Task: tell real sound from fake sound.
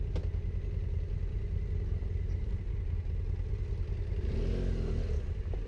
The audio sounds real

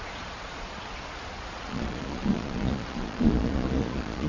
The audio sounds fake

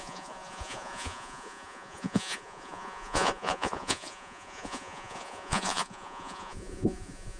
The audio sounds fake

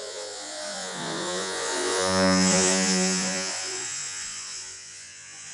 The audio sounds fake